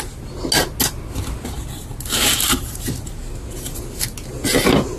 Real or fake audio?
real